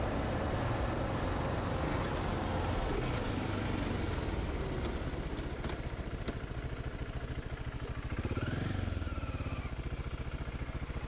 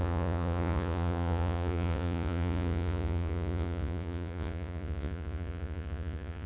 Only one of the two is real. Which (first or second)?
first